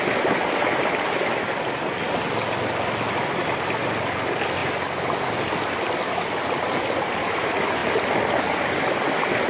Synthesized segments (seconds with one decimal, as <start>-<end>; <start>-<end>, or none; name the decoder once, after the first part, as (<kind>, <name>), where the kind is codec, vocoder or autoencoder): none